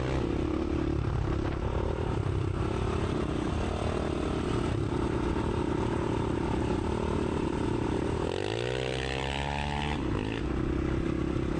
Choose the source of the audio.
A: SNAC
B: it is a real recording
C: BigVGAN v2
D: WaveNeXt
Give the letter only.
B